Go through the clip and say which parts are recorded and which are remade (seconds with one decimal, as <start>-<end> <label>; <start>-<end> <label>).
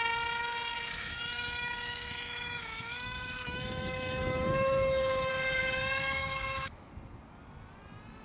0.0-0.7 recorded; 0.7-5.3 remade; 5.3-6.2 recorded; 6.2-6.9 remade; 6.9-8.2 recorded